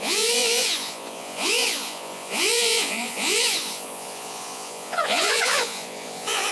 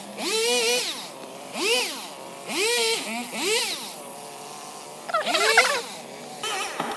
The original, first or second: second